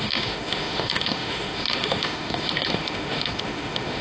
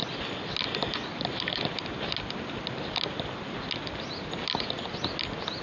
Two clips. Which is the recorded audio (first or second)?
second